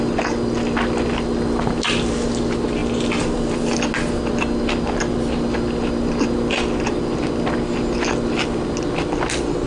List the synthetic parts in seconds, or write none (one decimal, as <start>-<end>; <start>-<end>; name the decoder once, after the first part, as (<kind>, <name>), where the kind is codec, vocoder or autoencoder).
none